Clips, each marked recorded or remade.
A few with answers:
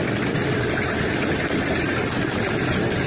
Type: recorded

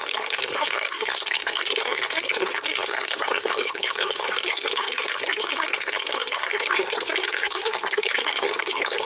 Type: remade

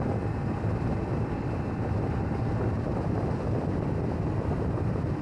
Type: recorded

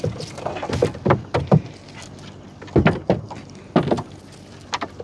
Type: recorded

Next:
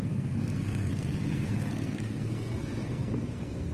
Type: remade